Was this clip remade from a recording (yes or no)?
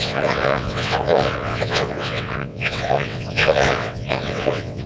yes